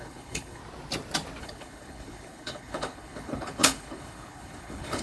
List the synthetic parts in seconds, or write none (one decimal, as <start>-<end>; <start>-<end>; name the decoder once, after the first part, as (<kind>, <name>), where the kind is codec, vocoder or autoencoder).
0.0-0.6 (codec, HILCodec); 1.4-5.0